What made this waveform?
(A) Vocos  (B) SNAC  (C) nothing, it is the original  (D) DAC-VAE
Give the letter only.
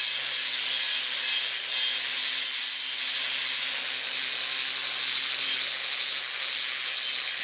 C